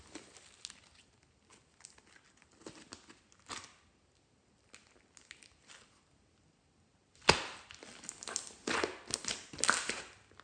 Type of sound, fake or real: real